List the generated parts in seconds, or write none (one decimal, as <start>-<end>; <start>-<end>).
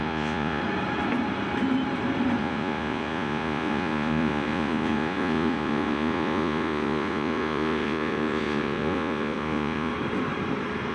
0.0-0.6; 2.4-9.9